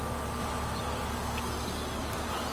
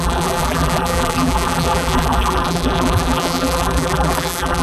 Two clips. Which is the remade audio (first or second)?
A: second